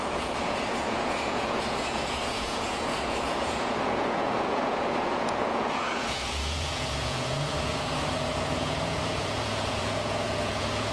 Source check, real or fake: fake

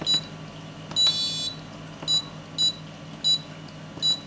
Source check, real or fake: real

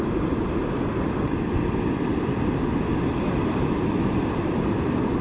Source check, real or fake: real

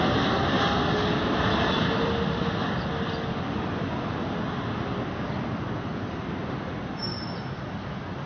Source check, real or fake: real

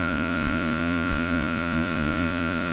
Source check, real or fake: fake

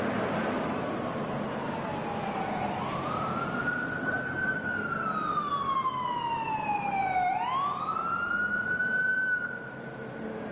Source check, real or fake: real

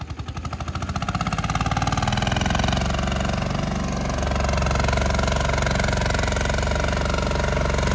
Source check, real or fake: real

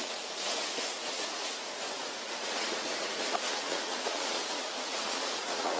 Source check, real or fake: fake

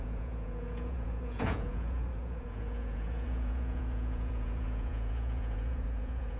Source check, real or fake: fake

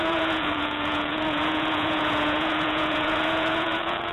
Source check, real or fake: fake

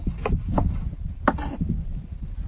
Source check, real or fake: real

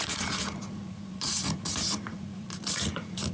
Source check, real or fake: fake